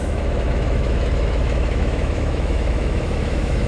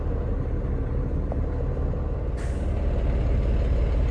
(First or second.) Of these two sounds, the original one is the second